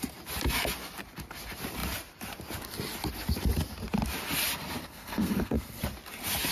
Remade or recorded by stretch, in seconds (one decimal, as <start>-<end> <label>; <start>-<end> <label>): 0.0-4.8 recorded; 4.8-5.8 remade; 5.8-6.5 recorded

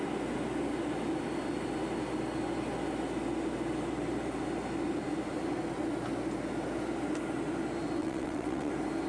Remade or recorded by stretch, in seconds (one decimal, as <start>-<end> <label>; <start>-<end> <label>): 0.0-8.0 recorded; 8.0-8.7 remade; 8.7-9.1 recorded